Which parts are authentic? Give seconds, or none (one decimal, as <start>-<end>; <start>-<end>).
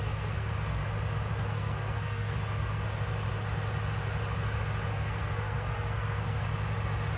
0.8-1.3; 2.8-4.9; 6.5-7.2